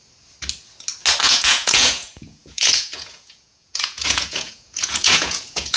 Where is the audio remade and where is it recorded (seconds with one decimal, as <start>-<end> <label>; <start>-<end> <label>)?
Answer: 0.0-1.2 recorded; 1.2-5.8 remade

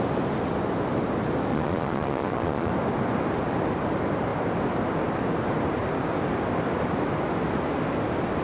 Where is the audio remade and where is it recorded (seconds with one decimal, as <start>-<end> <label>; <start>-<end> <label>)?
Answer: 0.0-1.5 recorded; 1.5-2.7 remade; 2.7-8.4 recorded

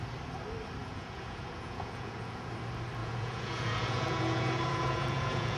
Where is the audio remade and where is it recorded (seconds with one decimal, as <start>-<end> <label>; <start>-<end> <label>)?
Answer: 0.0-0.8 recorded; 0.8-2.5 remade; 2.5-3.0 recorded; 3.0-5.6 remade